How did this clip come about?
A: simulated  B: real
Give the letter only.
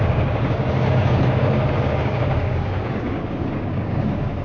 A